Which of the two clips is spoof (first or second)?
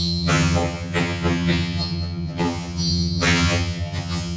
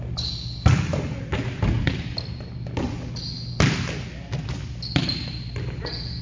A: first